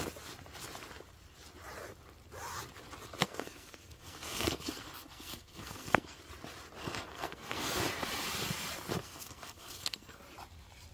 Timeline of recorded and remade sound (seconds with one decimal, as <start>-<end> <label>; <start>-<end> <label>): 0.0-3.2 recorded; 3.2-6.2 remade; 6.2-6.8 recorded; 6.8-7.8 remade; 7.8-9.0 recorded; 9.0-10.2 remade; 10.2-10.9 recorded

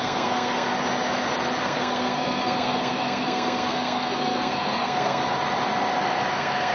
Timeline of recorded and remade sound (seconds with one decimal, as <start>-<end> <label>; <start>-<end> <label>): 0.0-0.7 remade; 0.7-1.6 recorded; 1.6-5.2 remade; 5.2-6.3 recorded; 6.3-6.7 remade

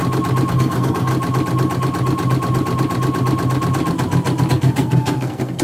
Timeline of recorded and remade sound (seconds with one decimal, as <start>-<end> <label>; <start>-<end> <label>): 0.0-0.5 recorded; 0.5-1.1 remade; 1.1-4.5 recorded; 4.5-5.6 remade

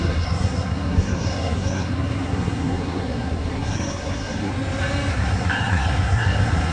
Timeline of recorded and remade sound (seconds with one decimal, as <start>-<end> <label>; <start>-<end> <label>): 0.0-4.5 remade; 4.5-5.1 recorded; 5.1-6.7 remade

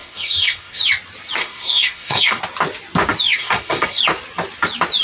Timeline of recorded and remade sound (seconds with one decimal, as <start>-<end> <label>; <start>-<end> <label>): 0.0-0.8 remade; 0.8-1.4 recorded; 1.4-2.4 remade; 2.4-3.4 recorded; 3.4-4.0 remade; 4.0-5.0 recorded

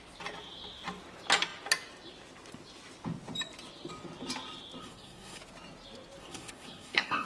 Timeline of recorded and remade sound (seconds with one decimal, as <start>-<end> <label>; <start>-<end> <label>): 0.0-4.8 recorded; 4.8-5.4 remade; 5.4-6.2 recorded; 6.2-7.3 remade